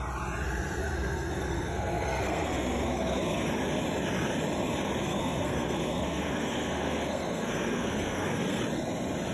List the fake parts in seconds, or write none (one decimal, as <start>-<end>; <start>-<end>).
0.8-3.5; 5.0-8.6